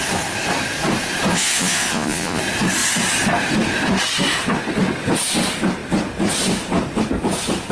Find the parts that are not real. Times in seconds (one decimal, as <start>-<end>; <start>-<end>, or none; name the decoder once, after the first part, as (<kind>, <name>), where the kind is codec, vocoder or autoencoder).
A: 1.3-2.4 (vocoder, Vocos)